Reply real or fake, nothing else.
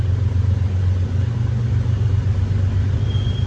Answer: real